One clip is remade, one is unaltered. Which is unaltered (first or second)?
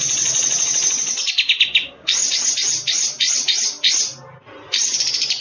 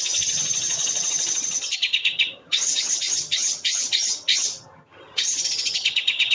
first